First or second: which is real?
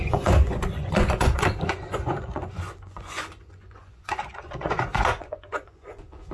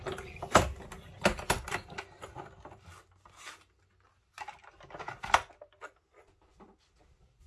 second